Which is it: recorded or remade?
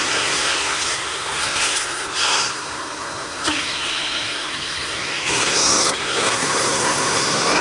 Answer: remade